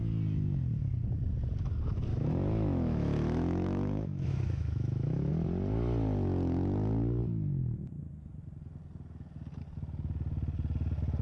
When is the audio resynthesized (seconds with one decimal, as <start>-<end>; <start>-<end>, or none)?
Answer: 2.1-5.3